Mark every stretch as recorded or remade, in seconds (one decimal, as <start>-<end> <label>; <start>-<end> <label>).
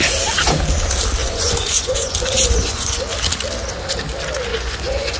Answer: 0.0-1.2 recorded; 1.2-3.0 remade; 3.0-4.5 recorded; 4.5-5.2 remade